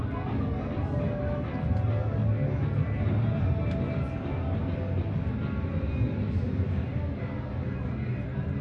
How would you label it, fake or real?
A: real